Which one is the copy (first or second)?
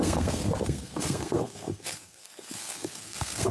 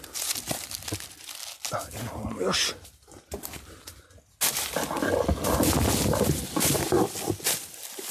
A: first